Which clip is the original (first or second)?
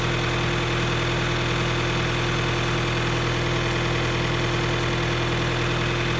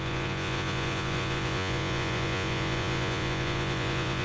first